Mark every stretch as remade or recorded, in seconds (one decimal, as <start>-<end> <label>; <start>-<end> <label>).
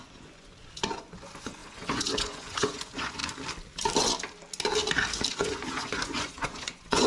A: 0.0-3.2 remade; 3.2-5.3 recorded; 5.3-7.1 remade